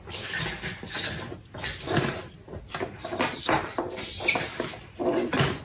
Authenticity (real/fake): real